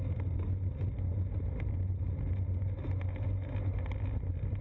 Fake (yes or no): no